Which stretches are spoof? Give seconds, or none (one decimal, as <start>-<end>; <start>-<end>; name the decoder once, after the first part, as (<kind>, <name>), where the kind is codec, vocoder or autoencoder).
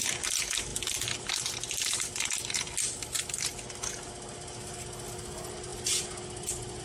none